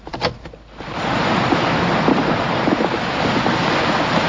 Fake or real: real